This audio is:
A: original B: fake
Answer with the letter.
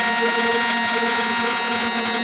B